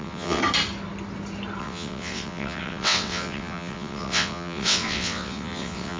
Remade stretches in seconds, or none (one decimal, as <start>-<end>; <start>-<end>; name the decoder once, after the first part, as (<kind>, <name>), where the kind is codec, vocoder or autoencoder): 0.0-0.4 (vocoder, WaveNeXt); 1.6-6.0